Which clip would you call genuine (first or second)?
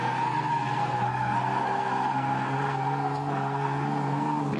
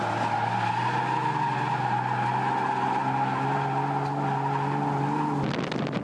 second